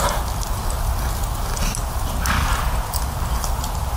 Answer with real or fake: real